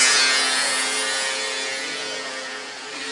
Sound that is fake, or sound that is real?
real